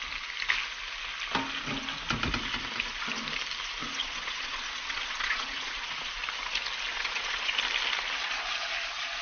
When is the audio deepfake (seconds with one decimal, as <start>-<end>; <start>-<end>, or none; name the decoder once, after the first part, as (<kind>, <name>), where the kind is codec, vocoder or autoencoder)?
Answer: 3.8-6.2 (vocoder, Vocos); 6.9-7.5